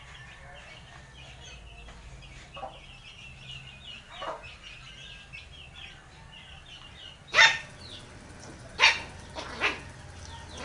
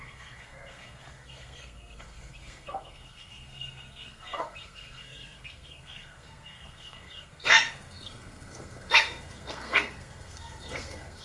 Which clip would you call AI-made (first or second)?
second